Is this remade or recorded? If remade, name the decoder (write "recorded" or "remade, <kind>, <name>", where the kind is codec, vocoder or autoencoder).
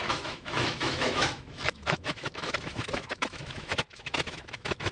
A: remade, autoencoder, DAC-VAE